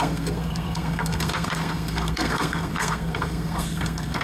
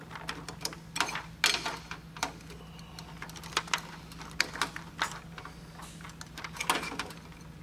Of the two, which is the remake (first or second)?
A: first